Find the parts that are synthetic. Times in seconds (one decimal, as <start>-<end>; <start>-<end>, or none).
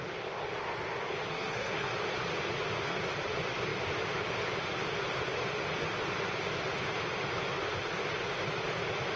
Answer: 1.3-1.9